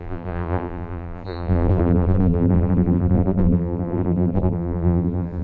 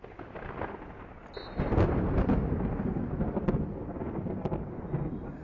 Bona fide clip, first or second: second